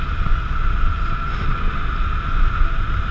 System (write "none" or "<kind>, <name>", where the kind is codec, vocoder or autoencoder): none